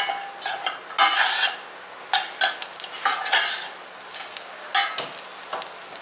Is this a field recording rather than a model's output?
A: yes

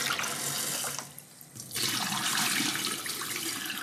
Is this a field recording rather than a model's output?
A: yes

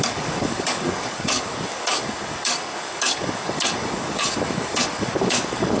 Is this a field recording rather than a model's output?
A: no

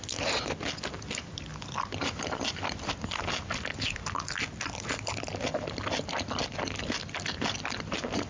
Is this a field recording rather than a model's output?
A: yes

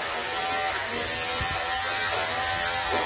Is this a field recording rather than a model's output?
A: yes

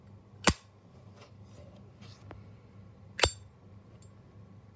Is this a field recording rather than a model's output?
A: yes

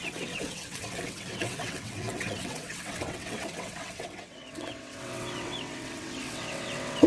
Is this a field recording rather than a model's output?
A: no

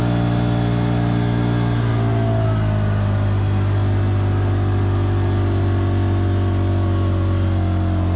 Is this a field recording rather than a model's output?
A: yes